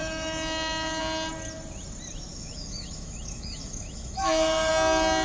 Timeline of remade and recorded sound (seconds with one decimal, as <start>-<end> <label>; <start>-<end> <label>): 0.0-1.0 remade; 1.0-2.3 recorded; 2.3-4.7 remade; 4.7-5.2 recorded